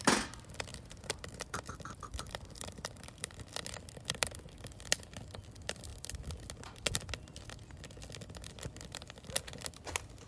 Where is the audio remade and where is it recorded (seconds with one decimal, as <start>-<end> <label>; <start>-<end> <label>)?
0.0-0.7 recorded; 0.7-3.5 remade; 3.5-10.3 recorded